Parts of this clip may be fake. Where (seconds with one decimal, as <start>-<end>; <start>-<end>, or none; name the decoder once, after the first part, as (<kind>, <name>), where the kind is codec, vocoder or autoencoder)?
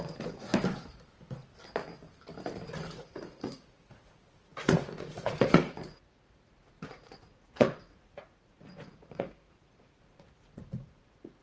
0.0-0.5 (vocoder, Vocos); 2.7-11.4